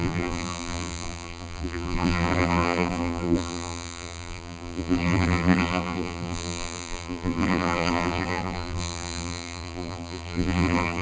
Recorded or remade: remade